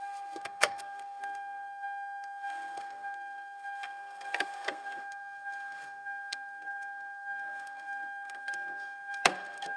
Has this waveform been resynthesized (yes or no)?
yes